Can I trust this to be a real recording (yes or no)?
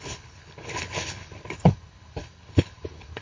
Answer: no